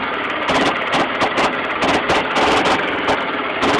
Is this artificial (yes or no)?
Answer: no